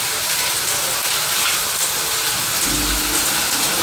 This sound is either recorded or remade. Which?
recorded